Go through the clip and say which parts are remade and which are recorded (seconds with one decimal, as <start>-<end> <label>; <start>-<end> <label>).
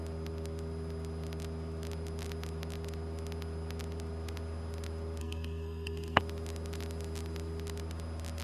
0.0-5.2 recorded; 5.2-6.2 remade; 6.2-8.4 recorded